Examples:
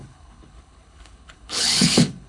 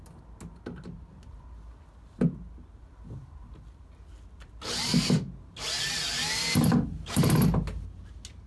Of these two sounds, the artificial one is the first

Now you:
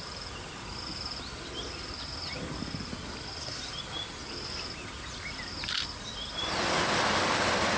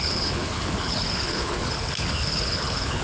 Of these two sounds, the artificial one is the second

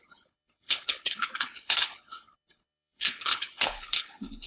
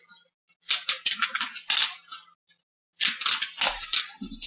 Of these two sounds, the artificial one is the first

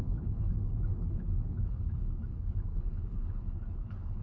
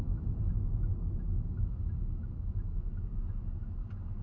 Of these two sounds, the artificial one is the first